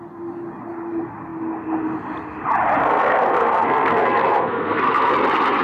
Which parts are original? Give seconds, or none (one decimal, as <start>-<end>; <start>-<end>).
0.0-2.8; 5.1-5.6